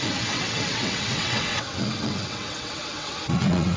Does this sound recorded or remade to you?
remade